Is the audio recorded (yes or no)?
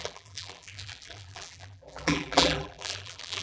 no